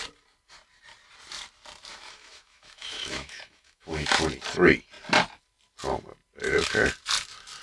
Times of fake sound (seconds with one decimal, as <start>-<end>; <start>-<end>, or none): 1.9-3.9